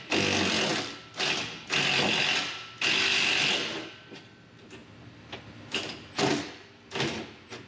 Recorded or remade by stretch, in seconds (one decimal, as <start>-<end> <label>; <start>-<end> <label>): 0.0-7.7 recorded

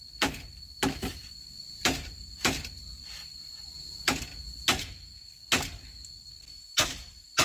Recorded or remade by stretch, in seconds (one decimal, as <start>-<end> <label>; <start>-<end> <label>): 0.0-1.8 remade; 1.8-2.8 recorded; 2.8-4.3 remade; 4.3-6.1 recorded; 6.1-7.4 remade

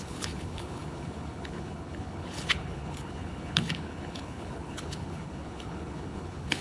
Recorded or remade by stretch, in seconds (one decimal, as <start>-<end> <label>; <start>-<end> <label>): 0.0-6.6 remade

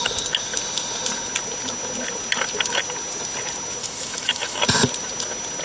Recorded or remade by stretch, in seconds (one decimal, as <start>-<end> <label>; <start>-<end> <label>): 0.0-3.8 recorded; 3.8-4.6 remade; 4.6-5.6 recorded